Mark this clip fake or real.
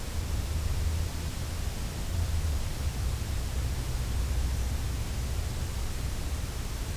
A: real